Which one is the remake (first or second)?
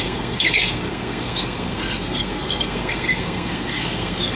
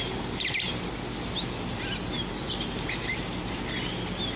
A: first